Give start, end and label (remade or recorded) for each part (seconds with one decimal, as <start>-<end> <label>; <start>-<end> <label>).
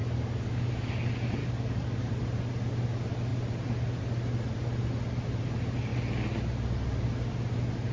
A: 0.0-0.7 remade; 0.7-1.4 recorded; 1.4-2.1 remade; 2.1-7.9 recorded